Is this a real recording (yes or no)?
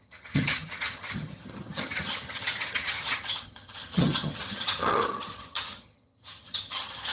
no